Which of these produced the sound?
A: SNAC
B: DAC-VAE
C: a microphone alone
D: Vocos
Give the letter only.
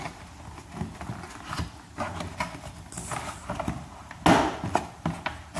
C